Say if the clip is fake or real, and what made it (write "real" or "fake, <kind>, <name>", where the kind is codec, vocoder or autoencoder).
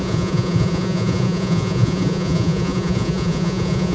fake, vocoder, Vocos